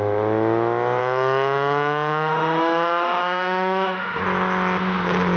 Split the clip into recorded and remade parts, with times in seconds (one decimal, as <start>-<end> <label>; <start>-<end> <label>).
0.0-1.0 recorded; 1.0-4.2 remade; 4.2-5.4 recorded